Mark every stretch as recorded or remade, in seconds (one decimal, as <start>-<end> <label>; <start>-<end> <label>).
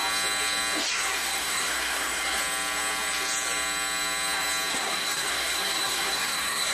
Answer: 0.0-0.9 recorded; 0.9-2.4 remade; 2.4-4.7 recorded; 4.7-6.7 remade